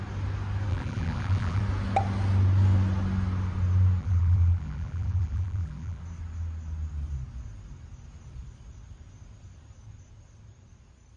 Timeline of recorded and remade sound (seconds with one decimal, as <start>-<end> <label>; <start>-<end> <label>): 0.0-0.7 recorded; 0.7-1.6 remade; 1.6-4.0 recorded; 4.0-6.0 remade; 6.0-11.2 recorded